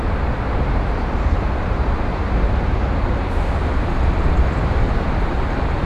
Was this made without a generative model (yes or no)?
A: no